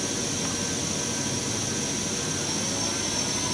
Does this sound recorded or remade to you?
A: recorded